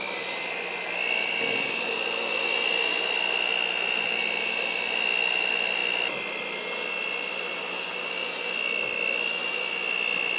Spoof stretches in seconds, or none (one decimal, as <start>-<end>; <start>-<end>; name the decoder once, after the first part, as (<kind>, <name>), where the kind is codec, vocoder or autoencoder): none